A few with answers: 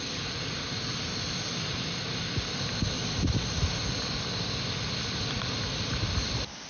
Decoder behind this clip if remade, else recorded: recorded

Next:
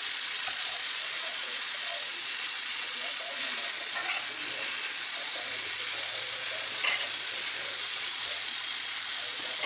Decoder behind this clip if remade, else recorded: remade, vocoder, Vocos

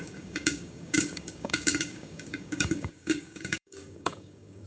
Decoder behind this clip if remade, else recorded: remade, codec, DAC